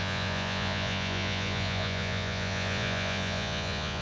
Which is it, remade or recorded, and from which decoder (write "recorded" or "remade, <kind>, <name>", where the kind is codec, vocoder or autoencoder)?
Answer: remade, vocoder, Vocos